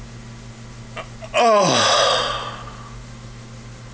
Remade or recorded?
recorded